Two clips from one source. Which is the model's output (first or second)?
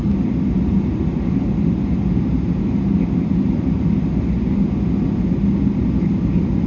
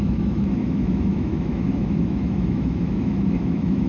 second